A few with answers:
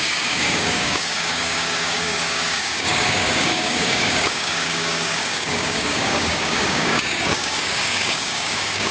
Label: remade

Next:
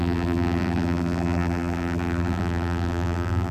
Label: remade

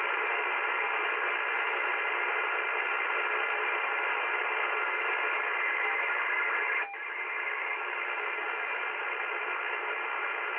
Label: recorded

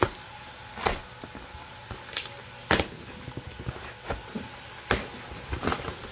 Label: recorded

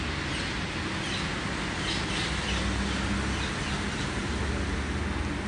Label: recorded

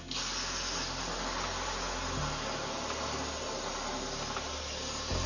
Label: recorded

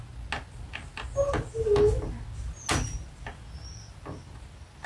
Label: recorded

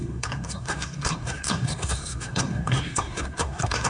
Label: remade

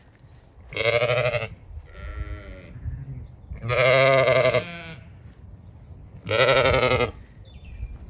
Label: recorded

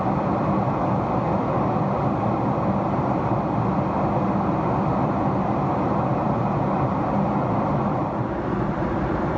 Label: recorded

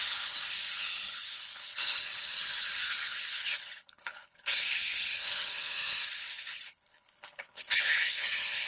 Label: remade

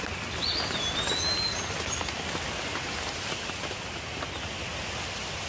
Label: recorded